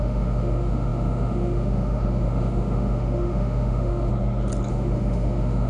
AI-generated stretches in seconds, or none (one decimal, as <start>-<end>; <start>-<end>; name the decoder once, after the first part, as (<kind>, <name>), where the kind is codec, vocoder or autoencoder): 0.0-4.1 (autoencoder, DAC-VAE); 4.7-5.7